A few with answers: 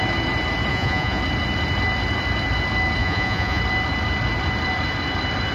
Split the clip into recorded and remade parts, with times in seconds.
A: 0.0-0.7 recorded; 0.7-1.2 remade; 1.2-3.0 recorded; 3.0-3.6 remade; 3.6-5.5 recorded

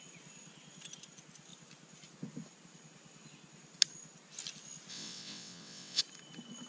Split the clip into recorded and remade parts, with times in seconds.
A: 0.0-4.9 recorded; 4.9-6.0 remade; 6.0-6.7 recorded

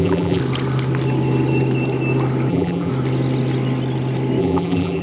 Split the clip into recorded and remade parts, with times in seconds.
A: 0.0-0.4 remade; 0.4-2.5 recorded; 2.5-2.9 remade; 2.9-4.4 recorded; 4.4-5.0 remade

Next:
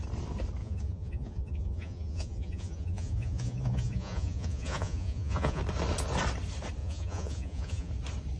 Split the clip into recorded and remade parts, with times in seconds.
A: 0.0-0.6 recorded; 0.6-5.6 remade; 5.6-6.8 recorded; 6.8-7.9 remade; 7.9-8.4 recorded

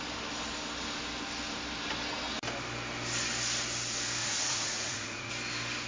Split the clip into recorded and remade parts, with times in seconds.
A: 0.0-4.2 recorded; 4.2-5.3 remade; 5.3-5.9 recorded

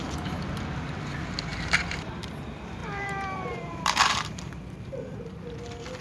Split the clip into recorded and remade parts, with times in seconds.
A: 0.0-1.5 recorded; 1.5-2.3 remade; 2.3-2.8 recorded; 2.8-4.4 remade; 4.4-6.0 recorded